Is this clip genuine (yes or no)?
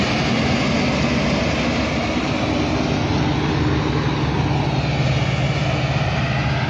yes